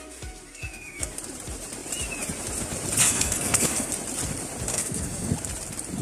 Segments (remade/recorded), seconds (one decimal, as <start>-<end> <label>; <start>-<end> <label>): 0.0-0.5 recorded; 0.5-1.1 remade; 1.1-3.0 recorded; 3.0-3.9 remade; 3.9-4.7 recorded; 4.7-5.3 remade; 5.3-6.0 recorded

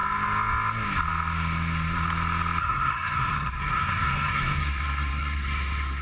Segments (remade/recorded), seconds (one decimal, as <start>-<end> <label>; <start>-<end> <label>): 0.0-2.6 recorded; 2.6-6.0 remade

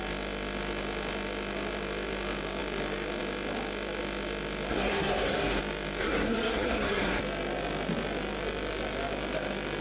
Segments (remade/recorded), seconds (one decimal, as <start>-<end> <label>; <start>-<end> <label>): 0.0-4.7 recorded; 4.7-5.6 remade; 5.6-6.0 recorded; 6.0-7.2 remade; 7.2-9.8 recorded

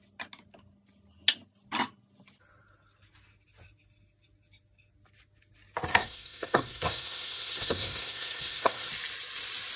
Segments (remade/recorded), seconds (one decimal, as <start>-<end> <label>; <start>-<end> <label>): 0.0-5.9 recorded; 5.9-8.9 remade; 8.9-9.8 recorded

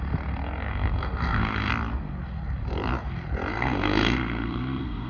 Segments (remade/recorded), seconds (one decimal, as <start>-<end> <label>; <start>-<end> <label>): 0.0-0.7 recorded; 0.7-1.7 remade; 1.7-3.5 recorded; 3.5-5.1 remade

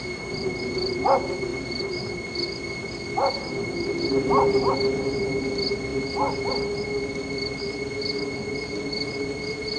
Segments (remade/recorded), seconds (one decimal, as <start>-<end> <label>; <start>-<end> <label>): 0.0-9.8 recorded

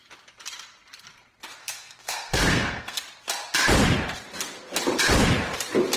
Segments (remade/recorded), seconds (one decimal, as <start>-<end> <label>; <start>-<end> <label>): 0.0-1.6 recorded; 1.6-3.0 remade; 3.0-6.0 recorded